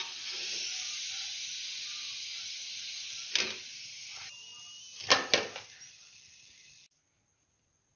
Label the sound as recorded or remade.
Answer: recorded